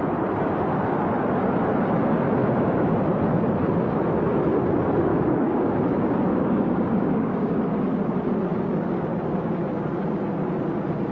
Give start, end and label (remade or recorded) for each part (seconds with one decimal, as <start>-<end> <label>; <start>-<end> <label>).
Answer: 0.0-2.4 recorded; 2.4-3.0 remade; 3.0-5.1 recorded; 5.1-5.7 remade; 5.7-6.3 recorded; 6.3-7.6 remade; 7.6-11.1 recorded